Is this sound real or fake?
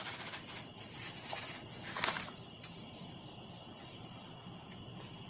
real